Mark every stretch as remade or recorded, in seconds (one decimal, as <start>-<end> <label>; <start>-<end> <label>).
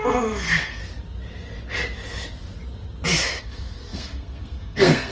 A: 0.0-0.8 remade; 0.8-3.4 recorded; 3.4-5.1 remade